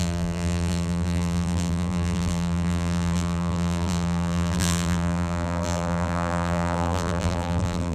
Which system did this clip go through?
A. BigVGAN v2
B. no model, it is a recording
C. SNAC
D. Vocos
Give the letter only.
A